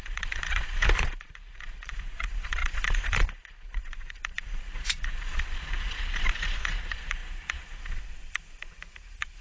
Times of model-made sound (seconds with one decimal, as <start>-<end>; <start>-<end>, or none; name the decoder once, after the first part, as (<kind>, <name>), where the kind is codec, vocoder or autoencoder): 0.0-9.4 (vocoder, Vocos)

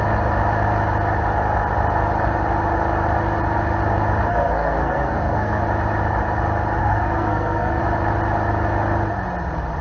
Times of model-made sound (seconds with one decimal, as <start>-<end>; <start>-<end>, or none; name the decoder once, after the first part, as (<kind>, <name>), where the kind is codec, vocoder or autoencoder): 4.3-5.6 (codec, SNAC); 6.8-7.8

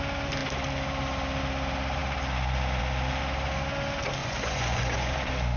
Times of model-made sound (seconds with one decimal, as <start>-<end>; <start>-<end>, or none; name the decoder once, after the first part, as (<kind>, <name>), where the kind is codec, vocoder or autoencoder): 4.2-5.1 (vocoder, Vocos)

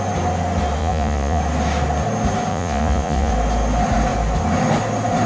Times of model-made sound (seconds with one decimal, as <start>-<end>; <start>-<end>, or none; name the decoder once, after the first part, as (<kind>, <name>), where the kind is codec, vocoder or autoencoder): 0.8-1.4 (vocoder, Vocos); 2.5-3.3

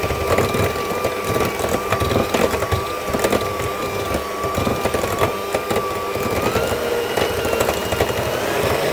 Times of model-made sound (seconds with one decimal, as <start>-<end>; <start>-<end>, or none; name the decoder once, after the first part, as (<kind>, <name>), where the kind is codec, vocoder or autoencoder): none

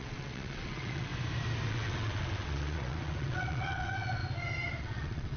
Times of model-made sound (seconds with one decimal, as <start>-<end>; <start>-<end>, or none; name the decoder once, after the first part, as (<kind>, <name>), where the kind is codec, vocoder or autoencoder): 0.0-1.1 (vocoder, WaveNeXt); 1.7-4.2; 4.8-5.4